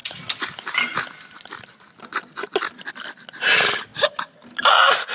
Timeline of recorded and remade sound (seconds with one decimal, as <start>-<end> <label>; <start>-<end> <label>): 0.0-5.1 recorded